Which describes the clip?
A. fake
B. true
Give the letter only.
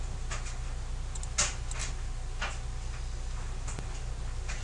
B